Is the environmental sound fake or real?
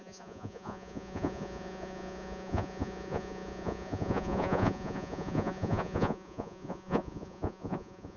fake